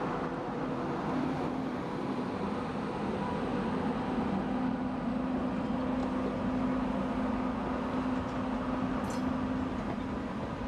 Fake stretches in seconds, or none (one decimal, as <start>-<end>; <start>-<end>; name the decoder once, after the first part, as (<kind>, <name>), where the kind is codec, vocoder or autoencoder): 0.0-3.5 (vocoder, BigVGAN v2); 5.6-6.0; 9.8-10.7

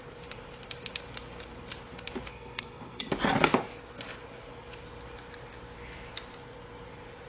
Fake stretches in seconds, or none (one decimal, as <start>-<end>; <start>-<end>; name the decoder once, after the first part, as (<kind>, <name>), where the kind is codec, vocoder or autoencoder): 2.3-3.0 (codec, SNAC)

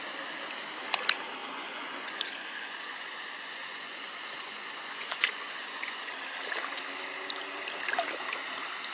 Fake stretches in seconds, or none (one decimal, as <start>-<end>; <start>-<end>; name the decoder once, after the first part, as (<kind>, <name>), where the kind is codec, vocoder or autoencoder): 1.4-6.1 (vocoder, Vocos)

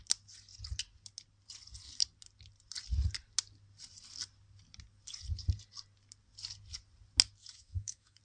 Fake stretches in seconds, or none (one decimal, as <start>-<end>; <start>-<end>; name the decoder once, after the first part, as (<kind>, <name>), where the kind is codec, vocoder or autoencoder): 7.4-8.2 (autoencoder, DAC-VAE)

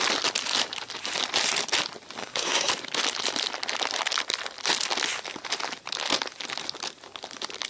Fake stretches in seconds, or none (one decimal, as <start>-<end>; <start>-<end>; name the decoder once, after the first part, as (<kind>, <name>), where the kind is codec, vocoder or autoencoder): 2.2-2.7 (codec, SNAC)

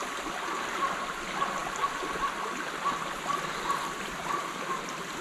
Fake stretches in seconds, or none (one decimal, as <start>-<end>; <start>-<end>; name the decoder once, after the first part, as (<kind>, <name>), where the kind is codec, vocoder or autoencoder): none